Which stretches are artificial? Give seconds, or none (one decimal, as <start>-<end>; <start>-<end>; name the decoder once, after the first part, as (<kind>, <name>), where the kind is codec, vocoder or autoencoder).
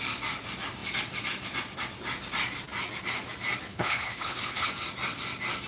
3.7-4.7 (codec, HILCodec)